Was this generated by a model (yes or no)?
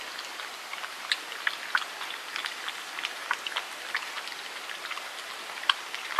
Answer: no